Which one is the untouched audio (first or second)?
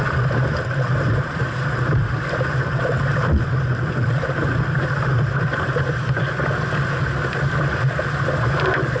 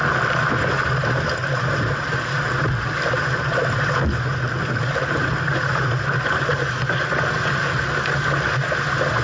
second